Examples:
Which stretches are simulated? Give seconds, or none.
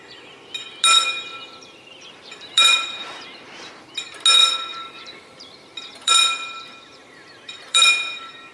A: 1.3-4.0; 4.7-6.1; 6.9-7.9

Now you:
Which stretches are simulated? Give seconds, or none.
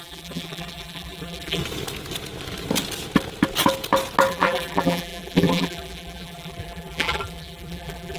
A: 0.0-1.6; 4.3-8.2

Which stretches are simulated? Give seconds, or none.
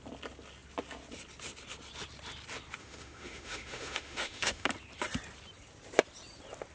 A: 2.8-4.7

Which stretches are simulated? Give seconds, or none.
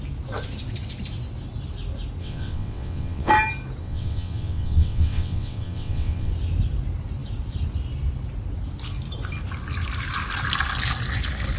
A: 2.2-3.3; 3.8-6.3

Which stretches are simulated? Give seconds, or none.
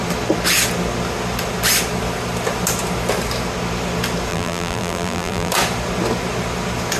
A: 4.3-5.5